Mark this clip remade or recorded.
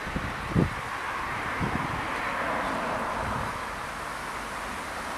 recorded